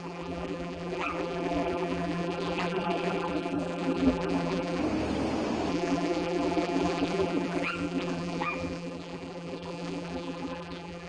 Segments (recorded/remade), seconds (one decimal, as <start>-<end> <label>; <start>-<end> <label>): 0.0-4.8 remade; 4.8-5.7 recorded; 5.7-11.1 remade